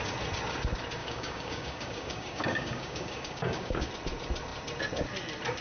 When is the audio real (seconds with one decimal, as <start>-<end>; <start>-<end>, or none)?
0.0-1.0; 3.9-5.6